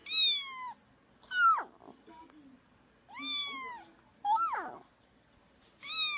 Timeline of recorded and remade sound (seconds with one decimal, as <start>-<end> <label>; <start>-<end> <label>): 0.0-6.2 recorded